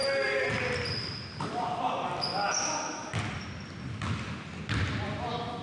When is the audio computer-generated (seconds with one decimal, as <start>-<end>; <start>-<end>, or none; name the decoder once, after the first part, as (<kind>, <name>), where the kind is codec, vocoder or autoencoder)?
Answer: none